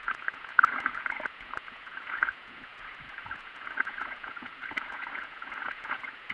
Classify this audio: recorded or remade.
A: remade